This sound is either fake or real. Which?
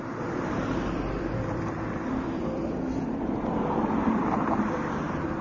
fake